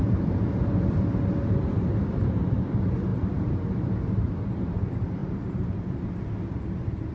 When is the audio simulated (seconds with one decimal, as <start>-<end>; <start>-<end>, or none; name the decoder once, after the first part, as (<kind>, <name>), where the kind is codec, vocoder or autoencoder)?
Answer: none